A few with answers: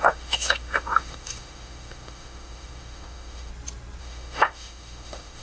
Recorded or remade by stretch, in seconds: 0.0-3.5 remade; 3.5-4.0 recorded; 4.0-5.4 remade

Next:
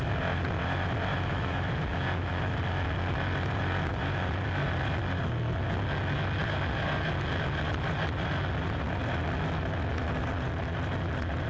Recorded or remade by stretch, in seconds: 0.0-1.1 recorded; 1.1-2.6 remade; 2.6-11.5 recorded

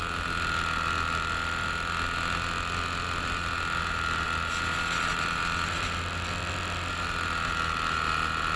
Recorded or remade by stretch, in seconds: 0.0-8.6 recorded

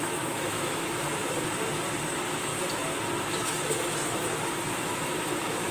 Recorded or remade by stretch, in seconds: 0.0-1.1 remade; 1.1-2.0 recorded; 2.0-2.5 remade; 2.5-3.3 recorded; 3.3-5.7 remade